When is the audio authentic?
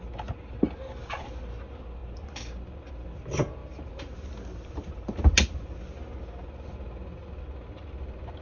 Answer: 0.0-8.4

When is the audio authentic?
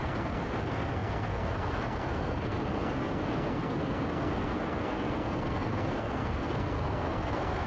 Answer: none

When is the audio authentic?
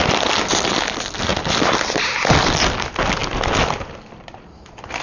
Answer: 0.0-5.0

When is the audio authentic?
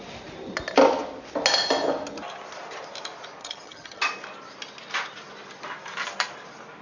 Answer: 0.0-3.4; 4.0-6.8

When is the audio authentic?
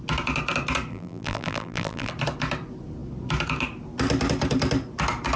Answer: 0.0-0.9; 2.1-5.4